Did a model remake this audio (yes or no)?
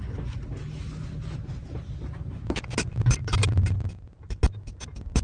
no